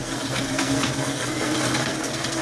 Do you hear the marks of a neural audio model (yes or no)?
yes